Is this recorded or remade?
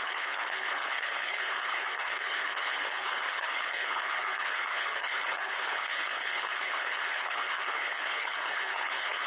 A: remade